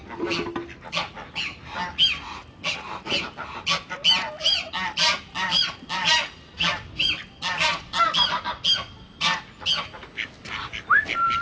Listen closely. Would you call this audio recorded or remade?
recorded